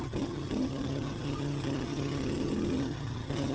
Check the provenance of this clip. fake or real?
fake